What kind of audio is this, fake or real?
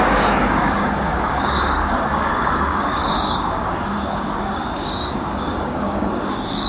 fake